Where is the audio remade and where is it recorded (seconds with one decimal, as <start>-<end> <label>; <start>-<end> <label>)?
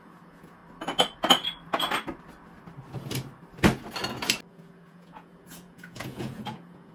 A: 0.0-0.6 remade; 0.6-4.5 recorded; 4.5-6.9 remade